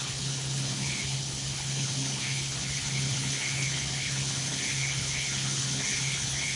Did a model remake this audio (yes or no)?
yes